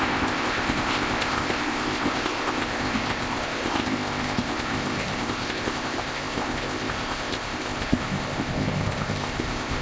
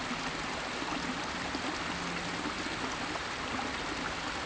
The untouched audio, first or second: second